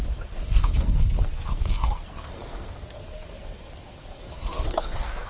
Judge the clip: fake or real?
fake